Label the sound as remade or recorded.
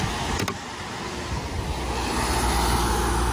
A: recorded